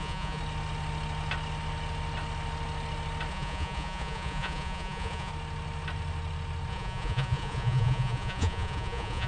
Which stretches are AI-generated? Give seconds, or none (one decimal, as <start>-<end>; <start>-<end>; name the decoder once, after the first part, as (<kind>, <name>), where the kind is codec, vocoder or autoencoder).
0.0-0.4 (vocoder, Vocos); 3.3-5.3; 6.7-9.3